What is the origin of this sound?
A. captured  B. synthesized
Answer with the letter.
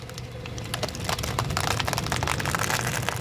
A